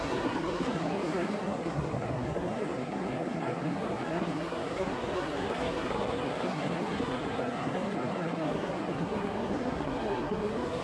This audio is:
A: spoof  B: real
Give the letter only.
A